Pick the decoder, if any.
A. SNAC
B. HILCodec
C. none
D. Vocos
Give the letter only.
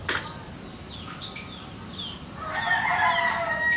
C